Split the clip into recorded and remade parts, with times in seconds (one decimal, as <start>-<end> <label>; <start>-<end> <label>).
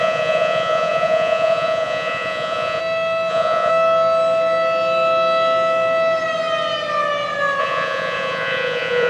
0.0-2.8 remade; 2.8-3.3 recorded; 3.3-3.7 remade; 3.7-7.6 recorded; 7.6-9.1 remade